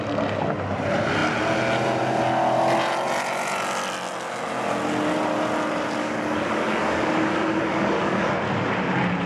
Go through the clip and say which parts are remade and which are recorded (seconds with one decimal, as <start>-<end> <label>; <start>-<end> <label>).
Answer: 0.0-6.0 recorded; 6.0-8.3 remade; 8.3-9.3 recorded